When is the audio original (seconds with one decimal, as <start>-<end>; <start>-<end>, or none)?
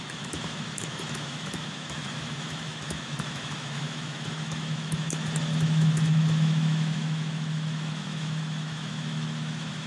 none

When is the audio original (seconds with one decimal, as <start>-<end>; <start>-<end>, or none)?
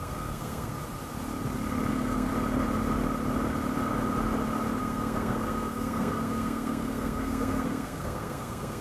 0.8-1.9; 2.3-4.8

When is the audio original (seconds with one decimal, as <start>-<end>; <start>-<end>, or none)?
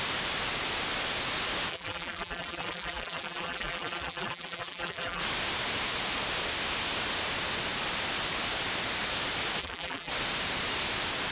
0.0-1.7; 5.2-9.6; 10.1-11.3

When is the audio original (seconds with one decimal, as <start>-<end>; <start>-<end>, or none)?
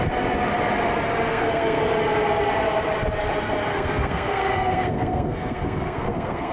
0.0-1.3; 1.8-3.7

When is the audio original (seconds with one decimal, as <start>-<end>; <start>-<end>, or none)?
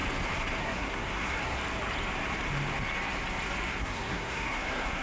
0.0-0.6; 1.6-3.8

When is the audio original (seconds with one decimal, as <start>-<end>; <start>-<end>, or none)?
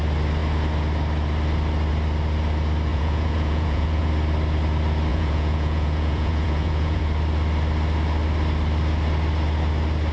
0.0-2.9; 4.1-5.1; 7.0-10.1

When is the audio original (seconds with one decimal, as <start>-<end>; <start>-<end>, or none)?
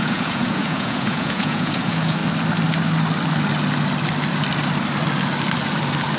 2.2-6.2